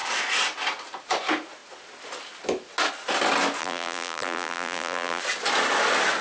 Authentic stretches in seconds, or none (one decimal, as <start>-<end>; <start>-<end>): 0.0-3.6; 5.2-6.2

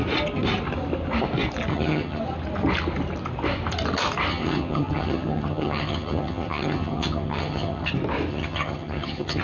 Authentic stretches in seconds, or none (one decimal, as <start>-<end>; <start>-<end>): 0.0-1.7; 2.2-4.3; 7.9-8.3

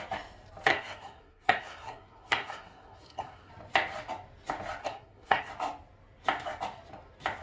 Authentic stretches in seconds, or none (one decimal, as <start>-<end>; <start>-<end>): 0.0-0.7; 3.5-4.8; 5.5-7.4

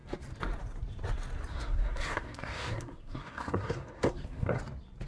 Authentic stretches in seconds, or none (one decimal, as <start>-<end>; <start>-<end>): 0.0-1.5; 4.6-5.1